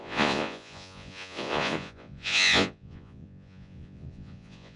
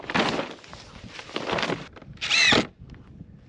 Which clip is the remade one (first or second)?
first